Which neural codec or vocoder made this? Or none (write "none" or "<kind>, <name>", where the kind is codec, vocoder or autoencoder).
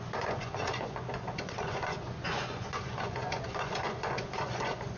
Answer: vocoder, Vocos